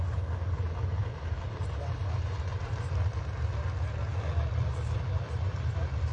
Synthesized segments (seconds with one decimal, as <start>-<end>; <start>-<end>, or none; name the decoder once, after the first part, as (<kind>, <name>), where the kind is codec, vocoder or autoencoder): 1.0-3.2 (vocoder, BigVGAN v2)